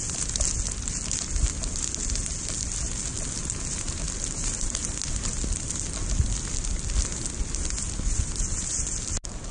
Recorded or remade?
recorded